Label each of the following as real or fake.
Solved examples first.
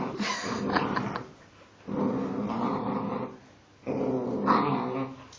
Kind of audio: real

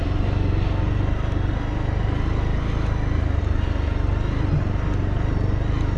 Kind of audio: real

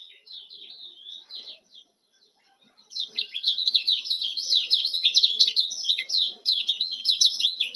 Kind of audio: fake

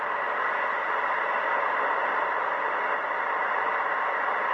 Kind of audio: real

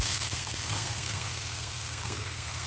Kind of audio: fake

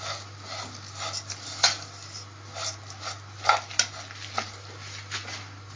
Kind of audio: real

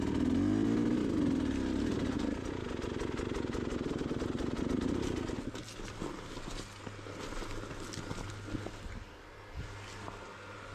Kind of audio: real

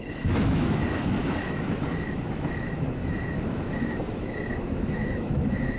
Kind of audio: fake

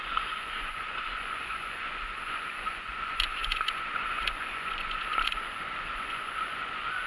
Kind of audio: fake